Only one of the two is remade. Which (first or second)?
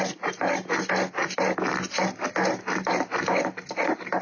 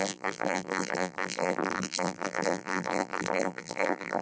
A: second